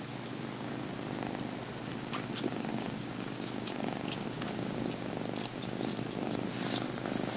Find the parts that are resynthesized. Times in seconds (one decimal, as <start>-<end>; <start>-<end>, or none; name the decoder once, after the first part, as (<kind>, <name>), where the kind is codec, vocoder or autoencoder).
2.7-5.1 (codec, DAC)